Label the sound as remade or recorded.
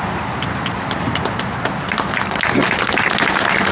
recorded